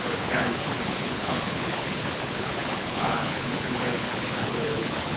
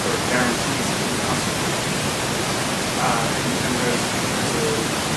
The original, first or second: second